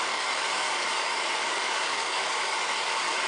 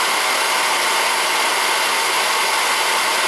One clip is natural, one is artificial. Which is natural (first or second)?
second